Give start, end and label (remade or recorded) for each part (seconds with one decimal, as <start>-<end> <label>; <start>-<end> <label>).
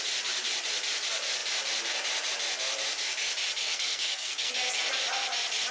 0.0-3.6 recorded; 3.6-4.5 remade; 4.5-5.7 recorded